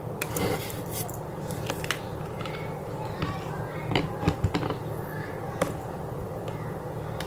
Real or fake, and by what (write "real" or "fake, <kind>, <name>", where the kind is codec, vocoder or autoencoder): real